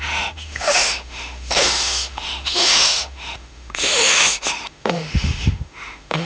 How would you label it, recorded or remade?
remade